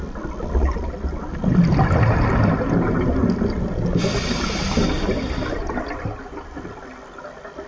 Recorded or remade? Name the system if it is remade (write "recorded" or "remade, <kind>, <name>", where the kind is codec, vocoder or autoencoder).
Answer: recorded